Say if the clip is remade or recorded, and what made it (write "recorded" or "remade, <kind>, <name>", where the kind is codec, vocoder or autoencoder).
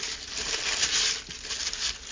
recorded